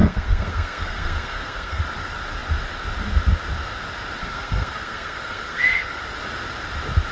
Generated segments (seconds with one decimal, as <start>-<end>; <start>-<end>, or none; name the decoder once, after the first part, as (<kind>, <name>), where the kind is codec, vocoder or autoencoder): 0.0-1.8 (codec, SNAC); 4.2-6.0